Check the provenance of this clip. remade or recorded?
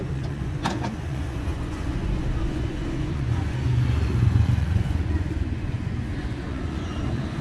remade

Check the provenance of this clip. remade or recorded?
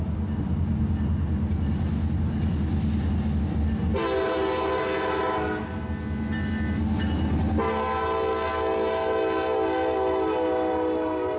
recorded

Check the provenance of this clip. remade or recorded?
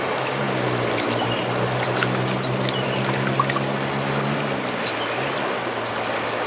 recorded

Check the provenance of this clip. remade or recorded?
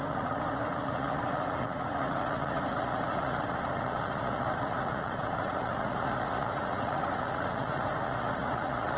remade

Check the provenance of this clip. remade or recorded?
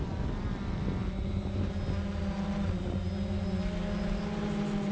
recorded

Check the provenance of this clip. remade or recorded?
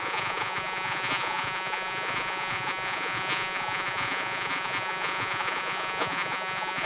remade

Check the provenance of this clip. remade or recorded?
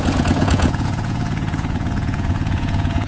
remade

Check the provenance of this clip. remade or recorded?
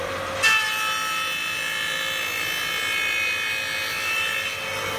recorded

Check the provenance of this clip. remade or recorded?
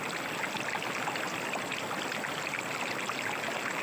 recorded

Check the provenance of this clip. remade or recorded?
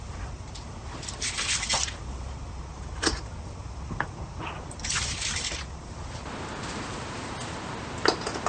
recorded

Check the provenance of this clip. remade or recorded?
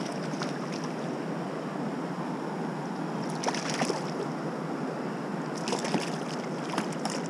recorded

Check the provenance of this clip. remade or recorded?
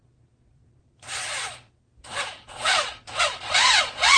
remade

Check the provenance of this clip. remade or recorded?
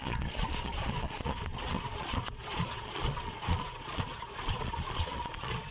remade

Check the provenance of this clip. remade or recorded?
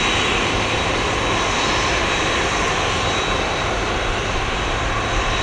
recorded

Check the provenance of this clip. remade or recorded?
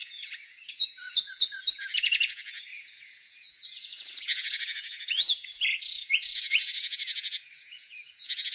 remade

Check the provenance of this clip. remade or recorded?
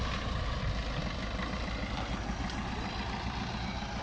recorded